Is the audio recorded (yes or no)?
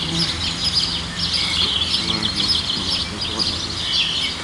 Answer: yes